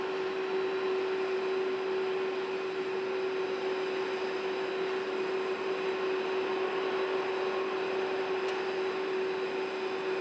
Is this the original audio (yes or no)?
yes